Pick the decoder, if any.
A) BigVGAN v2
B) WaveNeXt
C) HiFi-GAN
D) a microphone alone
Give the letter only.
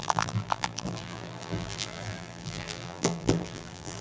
A